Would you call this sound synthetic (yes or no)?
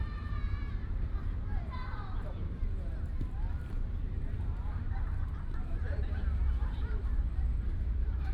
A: yes